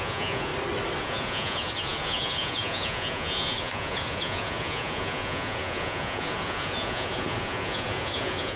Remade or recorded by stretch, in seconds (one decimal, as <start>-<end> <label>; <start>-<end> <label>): 0.0-0.5 remade; 0.5-1.0 recorded; 1.0-8.6 remade